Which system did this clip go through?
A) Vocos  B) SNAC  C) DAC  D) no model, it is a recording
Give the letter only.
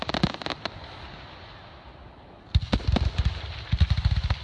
D